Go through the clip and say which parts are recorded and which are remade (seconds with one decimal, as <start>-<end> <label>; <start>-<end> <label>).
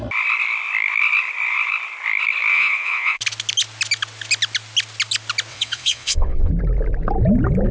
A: 0.0-2.5 recorded; 2.5-3.2 remade; 3.2-5.5 recorded; 5.5-6.5 remade; 6.5-7.7 recorded